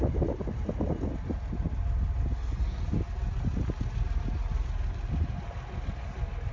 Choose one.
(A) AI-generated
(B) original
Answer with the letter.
B